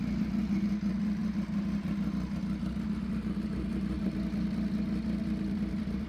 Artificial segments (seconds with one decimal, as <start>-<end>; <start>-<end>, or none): none